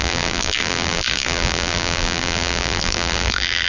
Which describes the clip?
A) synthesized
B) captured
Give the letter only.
A